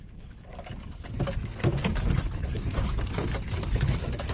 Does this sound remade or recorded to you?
remade